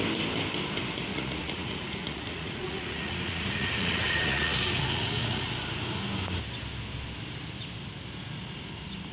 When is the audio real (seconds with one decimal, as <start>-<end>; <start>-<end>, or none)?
0.0-1.1; 5.5-9.1